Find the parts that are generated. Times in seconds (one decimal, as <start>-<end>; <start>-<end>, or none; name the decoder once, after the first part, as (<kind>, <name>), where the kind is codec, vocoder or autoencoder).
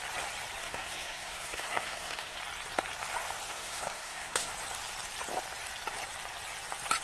0.6-2.4 (codec, SNAC); 3.5-4.5